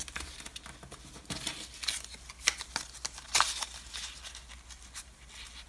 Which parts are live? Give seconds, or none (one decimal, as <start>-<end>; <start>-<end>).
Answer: 0.0-5.7

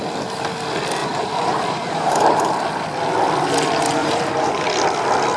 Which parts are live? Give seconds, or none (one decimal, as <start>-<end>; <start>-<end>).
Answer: 0.0-1.0; 2.4-4.0; 4.6-5.4

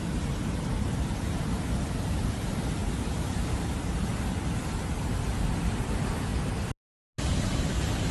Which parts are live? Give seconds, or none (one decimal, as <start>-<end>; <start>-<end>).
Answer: 4.1-5.0; 6.3-7.3

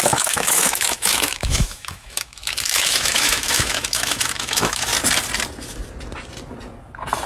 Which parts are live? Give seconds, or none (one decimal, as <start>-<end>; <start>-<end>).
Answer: 4.9-7.3